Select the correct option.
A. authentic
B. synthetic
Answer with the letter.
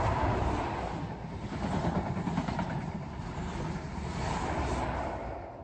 A